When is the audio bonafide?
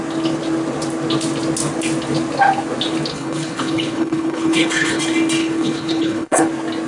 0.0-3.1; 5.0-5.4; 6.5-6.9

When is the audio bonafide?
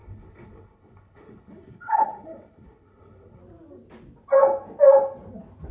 3.4-5.7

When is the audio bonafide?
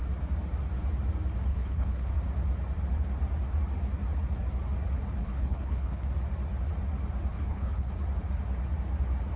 0.0-1.5; 2.1-5.2; 6.1-7.3; 7.9-9.4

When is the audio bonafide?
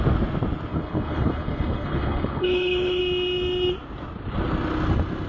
0.0-0.7; 3.0-5.3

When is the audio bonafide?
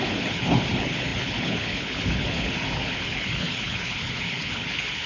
none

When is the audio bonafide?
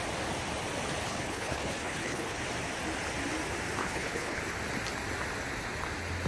0.0-1.0; 2.4-3.8; 4.4-6.3